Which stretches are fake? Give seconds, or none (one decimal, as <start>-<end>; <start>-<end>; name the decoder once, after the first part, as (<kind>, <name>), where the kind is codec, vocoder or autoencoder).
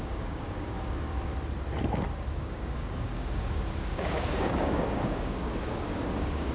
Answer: 0.0-1.3 (codec, DAC); 2.3-6.5